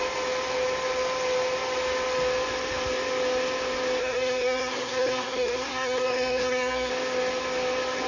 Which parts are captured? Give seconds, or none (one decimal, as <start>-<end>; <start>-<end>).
0.0-4.0; 6.9-8.1